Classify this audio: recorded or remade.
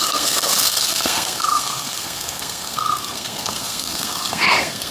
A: remade